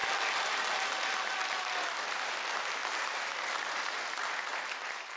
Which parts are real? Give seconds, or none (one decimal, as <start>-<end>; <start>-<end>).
0.0-2.8; 4.0-4.5